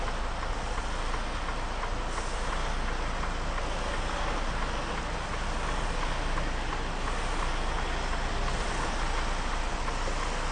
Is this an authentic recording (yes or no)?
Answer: yes